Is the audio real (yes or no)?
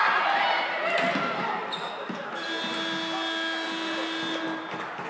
yes